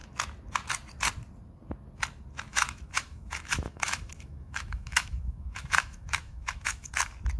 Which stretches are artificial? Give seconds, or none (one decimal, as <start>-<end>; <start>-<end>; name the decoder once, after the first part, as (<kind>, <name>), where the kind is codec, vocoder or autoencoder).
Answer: 2.5-6.9 (autoencoder, DAC-VAE)